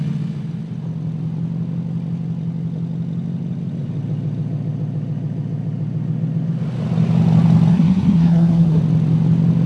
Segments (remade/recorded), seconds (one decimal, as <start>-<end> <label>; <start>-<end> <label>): 0.0-7.7 recorded; 7.7-8.8 remade; 8.8-9.7 recorded